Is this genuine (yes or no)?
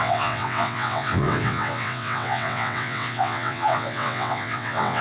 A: no